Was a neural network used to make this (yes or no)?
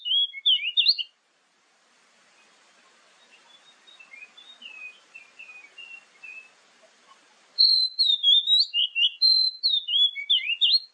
no